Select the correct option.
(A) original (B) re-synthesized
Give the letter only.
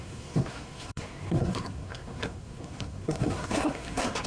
B